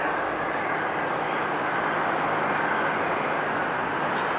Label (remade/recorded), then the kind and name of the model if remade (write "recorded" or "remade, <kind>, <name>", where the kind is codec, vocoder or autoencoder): recorded